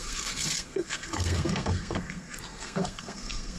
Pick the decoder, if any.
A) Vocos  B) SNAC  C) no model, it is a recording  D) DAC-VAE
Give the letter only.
B